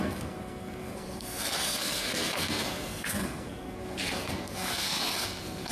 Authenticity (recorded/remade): remade